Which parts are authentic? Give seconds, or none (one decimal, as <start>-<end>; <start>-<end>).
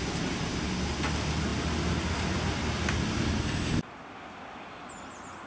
0.0-5.5